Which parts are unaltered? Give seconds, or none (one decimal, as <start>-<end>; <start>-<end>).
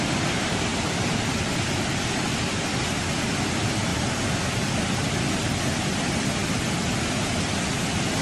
0.0-8.2